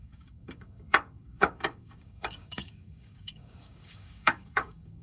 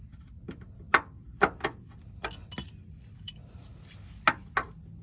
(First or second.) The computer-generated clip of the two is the first